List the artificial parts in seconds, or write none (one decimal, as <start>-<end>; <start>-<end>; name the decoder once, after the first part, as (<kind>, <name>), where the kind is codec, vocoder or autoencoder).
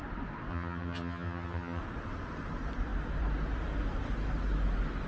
0.5-1.8 (vocoder, HiFi-GAN)